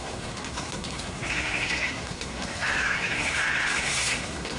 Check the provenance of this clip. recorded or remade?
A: remade